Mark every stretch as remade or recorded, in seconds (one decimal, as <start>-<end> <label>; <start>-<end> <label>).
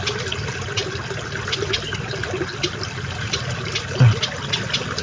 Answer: 0.0-5.0 recorded